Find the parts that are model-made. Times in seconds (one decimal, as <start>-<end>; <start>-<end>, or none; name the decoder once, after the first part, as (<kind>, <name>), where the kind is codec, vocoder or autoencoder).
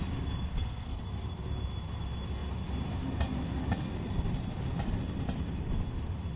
0.5-1.0 (codec, SNAC)